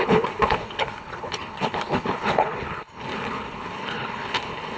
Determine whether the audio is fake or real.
fake